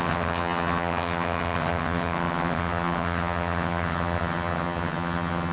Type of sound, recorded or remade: remade